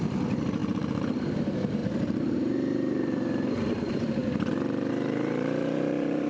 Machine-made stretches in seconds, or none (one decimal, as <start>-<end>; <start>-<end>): 0.0-6.3